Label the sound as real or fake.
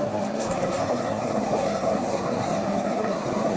fake